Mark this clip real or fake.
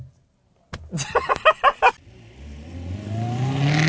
real